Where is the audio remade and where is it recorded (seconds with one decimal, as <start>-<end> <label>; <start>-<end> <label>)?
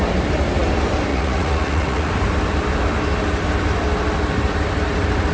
0.0-1.1 recorded; 1.1-2.1 remade; 2.1-5.3 recorded